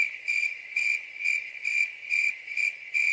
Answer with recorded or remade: remade